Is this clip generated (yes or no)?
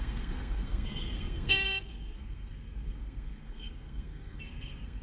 yes